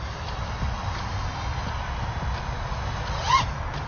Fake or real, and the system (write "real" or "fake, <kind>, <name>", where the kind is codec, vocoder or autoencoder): real